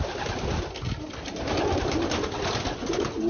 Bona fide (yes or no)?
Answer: yes